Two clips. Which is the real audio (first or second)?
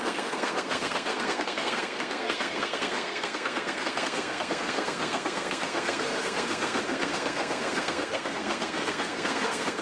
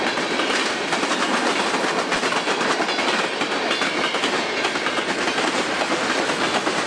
second